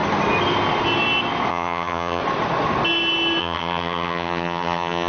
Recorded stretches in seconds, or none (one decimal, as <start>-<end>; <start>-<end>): 0.0-1.5; 2.2-3.4